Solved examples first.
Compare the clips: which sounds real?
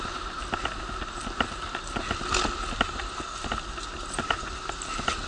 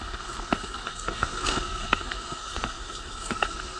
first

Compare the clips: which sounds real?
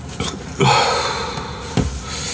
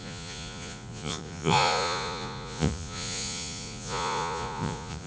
first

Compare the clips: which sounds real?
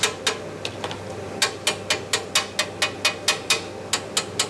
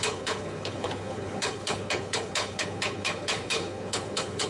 first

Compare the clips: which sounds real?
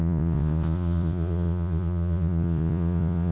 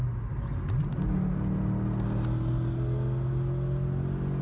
second